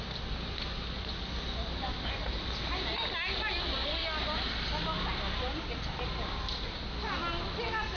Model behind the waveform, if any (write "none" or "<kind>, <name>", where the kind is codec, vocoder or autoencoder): none